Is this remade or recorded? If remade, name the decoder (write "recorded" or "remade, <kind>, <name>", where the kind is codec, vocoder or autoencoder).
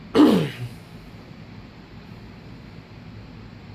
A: recorded